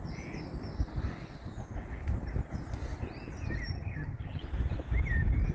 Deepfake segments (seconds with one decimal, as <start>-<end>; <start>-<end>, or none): 3.7-4.4